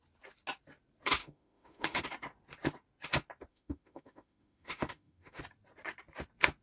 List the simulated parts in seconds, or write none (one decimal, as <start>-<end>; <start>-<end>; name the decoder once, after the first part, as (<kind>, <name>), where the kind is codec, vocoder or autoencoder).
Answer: 1.2-2.0 (autoencoder, DAC-VAE); 3.5-5.4